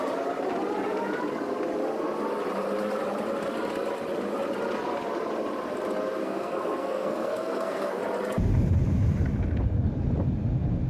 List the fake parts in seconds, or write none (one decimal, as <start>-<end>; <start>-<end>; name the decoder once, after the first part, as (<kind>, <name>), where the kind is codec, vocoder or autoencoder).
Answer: 6.2-8.0 (codec, SNAC)